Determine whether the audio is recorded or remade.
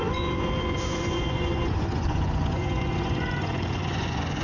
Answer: remade